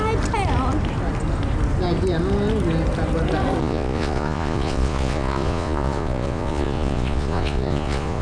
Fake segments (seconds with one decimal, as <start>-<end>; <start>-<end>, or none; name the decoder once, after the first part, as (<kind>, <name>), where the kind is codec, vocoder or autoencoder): 3.6-8.2 (vocoder, Vocos)